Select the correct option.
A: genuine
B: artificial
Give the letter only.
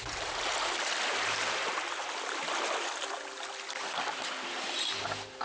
A